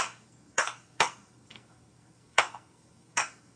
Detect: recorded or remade remade